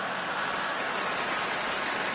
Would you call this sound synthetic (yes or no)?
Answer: no